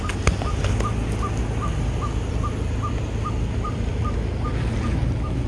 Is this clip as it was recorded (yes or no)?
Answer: yes